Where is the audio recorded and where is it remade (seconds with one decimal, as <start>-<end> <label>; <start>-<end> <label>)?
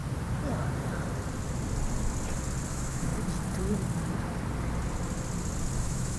0.0-2.7 recorded; 2.7-3.1 remade; 3.1-5.8 recorded; 5.8-6.2 remade